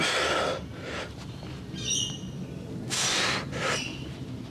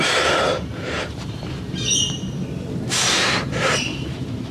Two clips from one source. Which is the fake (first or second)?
second